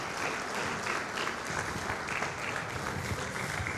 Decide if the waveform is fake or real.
real